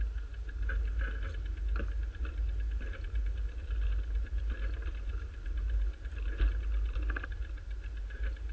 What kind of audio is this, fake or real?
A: real